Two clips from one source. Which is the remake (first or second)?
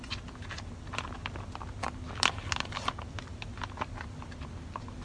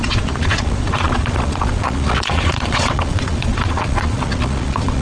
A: second